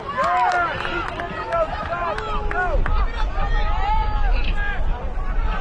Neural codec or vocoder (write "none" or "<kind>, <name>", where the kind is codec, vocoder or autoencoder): none